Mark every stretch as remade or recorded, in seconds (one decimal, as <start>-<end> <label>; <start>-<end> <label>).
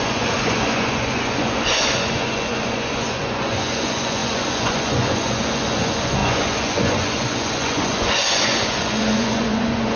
0.0-10.0 remade